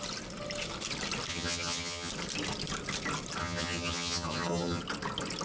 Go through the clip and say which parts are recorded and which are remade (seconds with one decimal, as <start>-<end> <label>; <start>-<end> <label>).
0.0-1.3 recorded; 1.3-2.1 remade; 2.1-3.4 recorded; 3.4-4.8 remade; 4.8-5.4 recorded